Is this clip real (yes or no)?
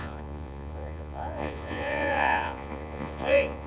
no